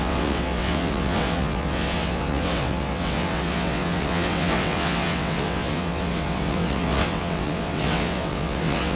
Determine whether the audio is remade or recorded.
remade